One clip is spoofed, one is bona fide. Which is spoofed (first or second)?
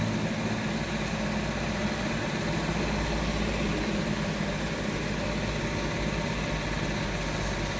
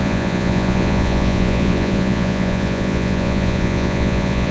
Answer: second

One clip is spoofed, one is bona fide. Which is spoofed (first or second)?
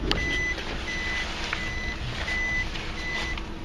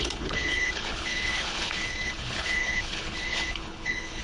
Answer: second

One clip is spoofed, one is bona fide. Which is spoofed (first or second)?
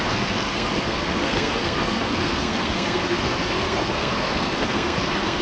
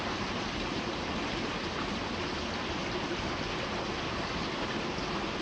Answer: first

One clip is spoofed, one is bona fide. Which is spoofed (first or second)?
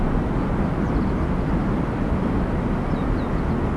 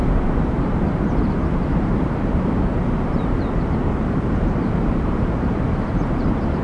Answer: second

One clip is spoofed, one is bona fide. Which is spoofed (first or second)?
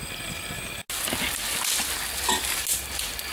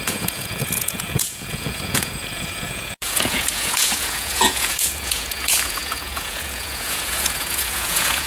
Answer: second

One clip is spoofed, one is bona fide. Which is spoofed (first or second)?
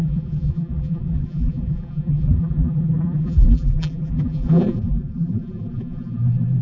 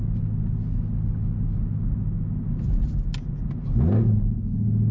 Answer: first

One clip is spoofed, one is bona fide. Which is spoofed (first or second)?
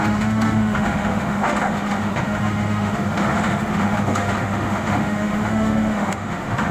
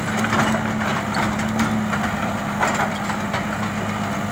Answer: first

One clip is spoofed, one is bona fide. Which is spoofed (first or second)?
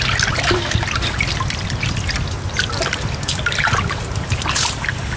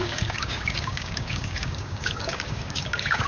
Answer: second